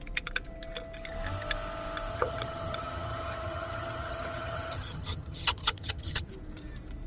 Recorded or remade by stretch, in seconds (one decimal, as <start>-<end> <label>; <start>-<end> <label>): 0.0-2.1 recorded; 2.1-6.3 remade; 6.3-7.1 recorded